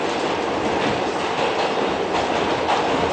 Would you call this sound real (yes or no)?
yes